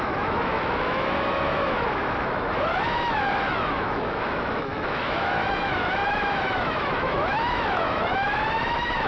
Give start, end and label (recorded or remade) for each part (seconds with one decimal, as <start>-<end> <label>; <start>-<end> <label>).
0.0-9.1 remade